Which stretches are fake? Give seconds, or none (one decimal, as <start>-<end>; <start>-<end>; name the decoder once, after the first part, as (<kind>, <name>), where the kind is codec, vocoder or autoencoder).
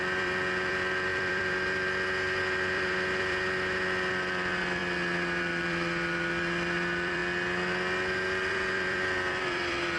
0.0-4.8 (vocoder, BigVGAN v2); 5.4-7.2; 8.5-10.0